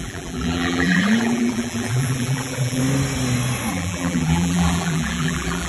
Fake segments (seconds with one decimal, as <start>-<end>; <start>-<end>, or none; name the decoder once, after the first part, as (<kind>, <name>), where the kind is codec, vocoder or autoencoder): 0.0-2.8 (vocoder, BigVGAN v2); 3.7-5.7